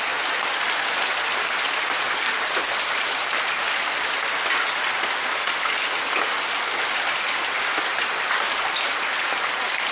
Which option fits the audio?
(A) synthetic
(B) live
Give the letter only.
B